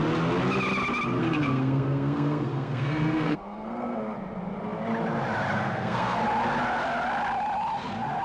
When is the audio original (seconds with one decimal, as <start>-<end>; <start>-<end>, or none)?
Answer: 0.0-1.2; 4.0-5.5; 6.2-8.2

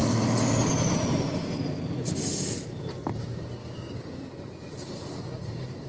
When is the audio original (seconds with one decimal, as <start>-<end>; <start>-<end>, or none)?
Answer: 0.0-3.6; 4.2-5.9

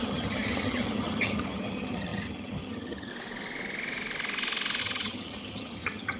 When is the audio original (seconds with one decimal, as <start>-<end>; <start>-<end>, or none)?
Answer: 3.1-4.8

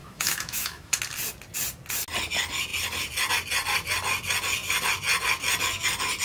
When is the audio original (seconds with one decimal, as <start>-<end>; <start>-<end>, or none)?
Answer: 1.0-6.2

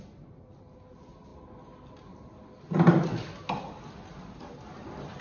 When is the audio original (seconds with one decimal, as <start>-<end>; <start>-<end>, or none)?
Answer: 0.0-5.2